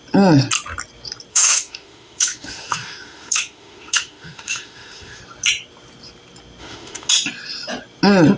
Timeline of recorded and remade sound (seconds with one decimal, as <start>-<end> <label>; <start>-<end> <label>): 0.0-1.3 recorded; 1.3-5.2 remade; 5.2-6.6 recorded; 6.6-7.1 remade; 7.1-8.4 recorded